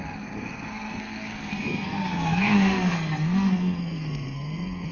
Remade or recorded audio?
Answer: remade